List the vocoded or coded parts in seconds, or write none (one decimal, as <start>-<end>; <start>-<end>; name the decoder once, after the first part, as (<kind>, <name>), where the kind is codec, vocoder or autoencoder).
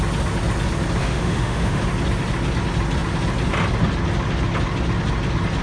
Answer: 1.0-1.8 (autoencoder, DAC-VAE)